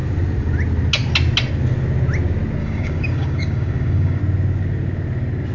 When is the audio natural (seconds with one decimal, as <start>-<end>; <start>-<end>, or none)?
0.0-2.6; 4.2-5.5